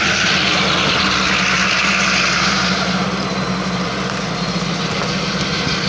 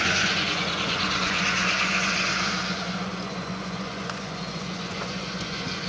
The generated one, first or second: second